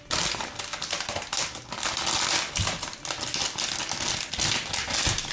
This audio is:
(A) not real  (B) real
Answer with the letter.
B